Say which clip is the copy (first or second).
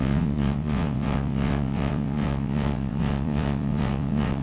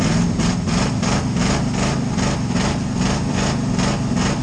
first